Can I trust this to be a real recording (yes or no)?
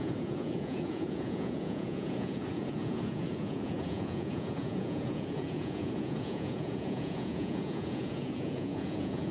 no